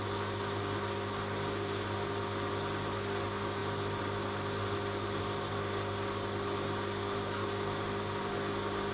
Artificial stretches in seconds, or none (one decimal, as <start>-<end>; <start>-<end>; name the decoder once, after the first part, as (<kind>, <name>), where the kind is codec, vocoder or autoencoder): none